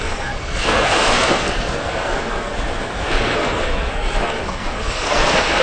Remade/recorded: remade